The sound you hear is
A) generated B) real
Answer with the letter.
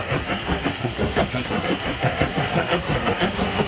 A